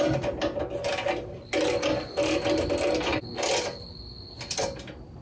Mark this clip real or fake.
real